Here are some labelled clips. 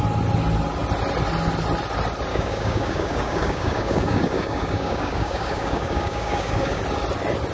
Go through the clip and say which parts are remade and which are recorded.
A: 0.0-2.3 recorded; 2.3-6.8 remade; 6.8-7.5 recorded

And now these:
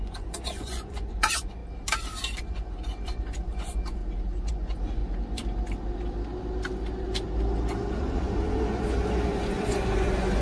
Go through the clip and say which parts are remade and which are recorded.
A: 0.0-1.6 remade; 1.6-2.4 recorded; 2.4-4.0 remade; 4.0-4.5 recorded; 4.5-5.0 remade; 5.0-8.0 recorded; 8.0-10.4 remade

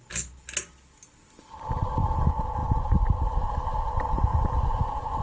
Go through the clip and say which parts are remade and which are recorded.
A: 0.0-4.3 recorded; 4.3-5.2 remade

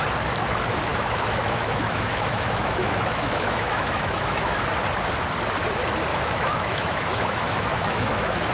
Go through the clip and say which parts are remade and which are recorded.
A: 0.0-0.9 recorded; 0.9-4.6 remade; 4.6-6.1 recorded; 6.1-8.5 remade